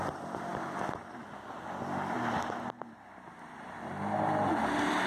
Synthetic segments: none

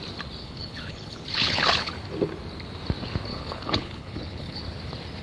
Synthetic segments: 0.4-1.9 (codec, HILCodec); 3.3-4.6

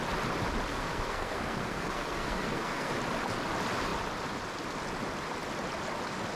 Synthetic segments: 0.7-2.9 (codec, SNAC)